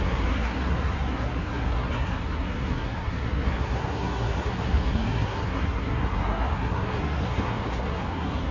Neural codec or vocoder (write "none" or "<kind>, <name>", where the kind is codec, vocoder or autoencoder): codec, SNAC